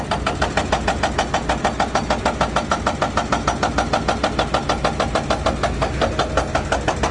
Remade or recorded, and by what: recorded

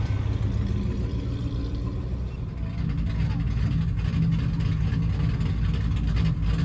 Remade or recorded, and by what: recorded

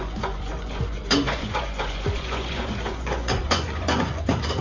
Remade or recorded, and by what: remade, vocoder, Vocos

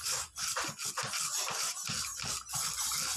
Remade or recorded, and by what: recorded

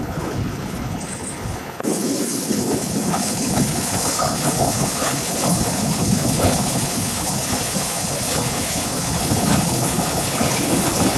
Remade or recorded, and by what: remade, codec, HILCodec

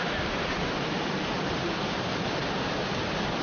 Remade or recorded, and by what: recorded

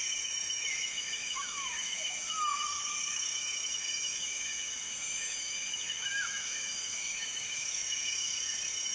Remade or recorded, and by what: remade, autoencoder, DAC-VAE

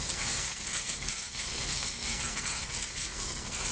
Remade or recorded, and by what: remade, codec, SNAC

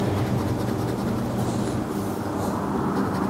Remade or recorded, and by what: recorded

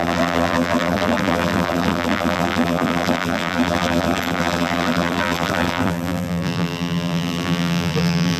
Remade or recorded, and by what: remade, vocoder, BigVGAN v2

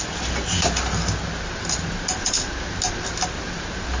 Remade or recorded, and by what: recorded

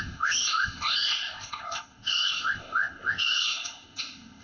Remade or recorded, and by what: remade, codec, ZipCodec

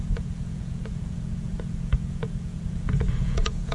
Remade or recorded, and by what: remade, vocoder, Vocos